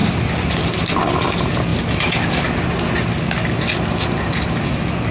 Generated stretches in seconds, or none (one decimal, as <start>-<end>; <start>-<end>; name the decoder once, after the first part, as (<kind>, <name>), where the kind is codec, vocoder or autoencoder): none